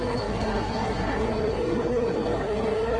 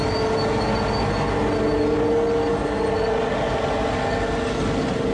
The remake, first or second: first